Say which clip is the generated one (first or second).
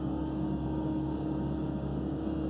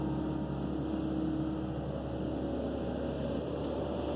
first